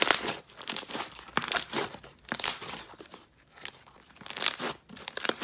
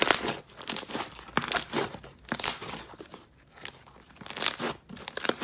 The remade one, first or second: first